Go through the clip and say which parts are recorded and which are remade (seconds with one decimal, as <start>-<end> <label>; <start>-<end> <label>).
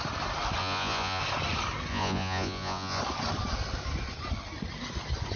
0.0-0.6 recorded; 0.6-1.2 remade; 1.2-1.9 recorded; 1.9-3.0 remade; 3.0-5.4 recorded